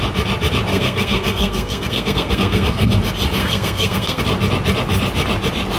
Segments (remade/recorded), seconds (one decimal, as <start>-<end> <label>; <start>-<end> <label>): 0.0-0.7 recorded; 0.7-2.9 remade; 2.9-3.4 recorded; 3.4-4.2 remade; 4.2-5.8 recorded